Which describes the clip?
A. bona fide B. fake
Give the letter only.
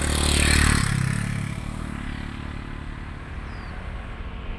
A